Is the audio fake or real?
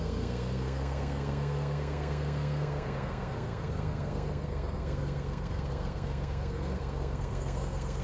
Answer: fake